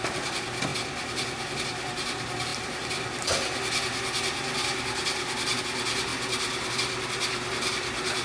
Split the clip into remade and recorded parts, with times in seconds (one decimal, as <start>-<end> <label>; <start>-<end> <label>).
0.0-8.2 recorded